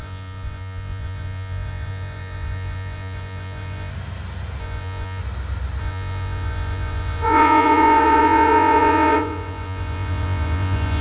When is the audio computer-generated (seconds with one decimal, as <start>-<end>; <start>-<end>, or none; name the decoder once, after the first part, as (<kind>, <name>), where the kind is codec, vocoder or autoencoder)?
0.0-3.9 (vocoder, Vocos); 4.6-5.2; 5.8-11.0